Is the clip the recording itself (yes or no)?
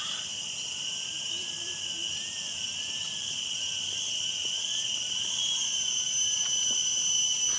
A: yes